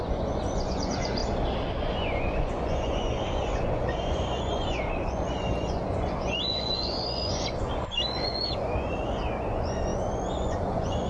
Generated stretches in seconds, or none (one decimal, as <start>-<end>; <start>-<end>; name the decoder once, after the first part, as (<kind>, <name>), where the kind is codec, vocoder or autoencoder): 0.0-1.2 (vocoder, Vocos); 1.8-11.1